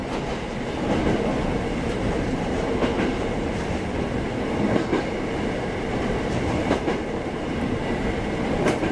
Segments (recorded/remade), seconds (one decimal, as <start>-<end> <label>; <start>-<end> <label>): 0.0-1.5 recorded; 1.5-8.9 remade